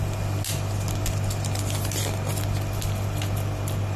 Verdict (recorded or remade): recorded